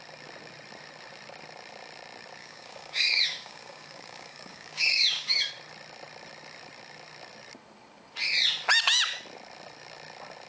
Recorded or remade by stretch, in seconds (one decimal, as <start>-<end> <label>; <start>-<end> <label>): 0.0-2.4 recorded; 2.4-5.5 remade; 5.5-10.5 recorded